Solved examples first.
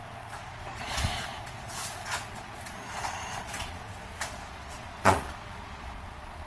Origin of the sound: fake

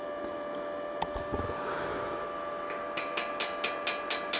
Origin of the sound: real